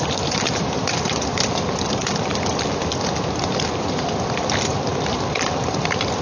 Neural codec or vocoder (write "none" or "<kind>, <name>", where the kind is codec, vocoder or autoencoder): vocoder, BigVGAN v2